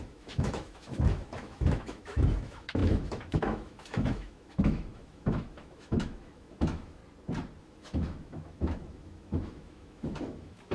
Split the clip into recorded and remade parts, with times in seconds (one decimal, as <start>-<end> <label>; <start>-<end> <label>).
0.0-7.0 remade; 7.0-7.6 recorded; 7.6-10.7 remade